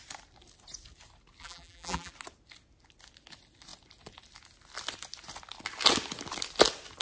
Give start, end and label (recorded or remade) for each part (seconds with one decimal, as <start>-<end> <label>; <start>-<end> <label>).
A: 0.0-1.4 recorded; 1.4-2.1 remade; 2.1-7.0 recorded